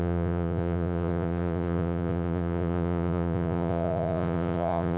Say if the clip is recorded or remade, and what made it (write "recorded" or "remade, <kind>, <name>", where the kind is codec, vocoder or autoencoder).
remade, vocoder, Vocos